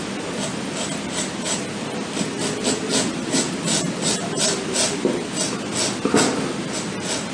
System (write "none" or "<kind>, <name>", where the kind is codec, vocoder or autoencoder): none